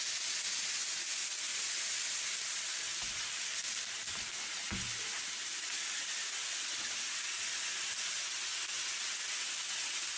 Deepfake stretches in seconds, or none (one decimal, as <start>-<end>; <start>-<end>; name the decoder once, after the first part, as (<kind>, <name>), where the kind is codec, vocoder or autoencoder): 1.5-4.0 (vocoder, BigVGAN v2)